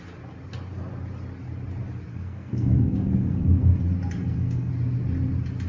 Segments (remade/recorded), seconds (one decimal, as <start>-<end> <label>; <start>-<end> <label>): 0.0-2.1 recorded; 2.1-3.8 remade; 3.8-4.2 recorded; 4.2-4.7 remade; 4.7-5.7 recorded